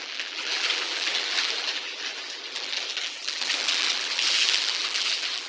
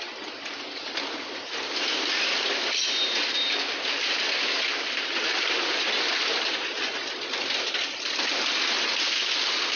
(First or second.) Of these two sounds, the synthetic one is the first